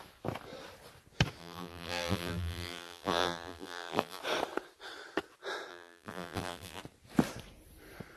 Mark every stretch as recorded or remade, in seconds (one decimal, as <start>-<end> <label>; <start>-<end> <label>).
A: 0.0-1.4 recorded; 1.4-4.2 remade; 4.2-5.7 recorded; 5.7-6.8 remade; 6.8-8.2 recorded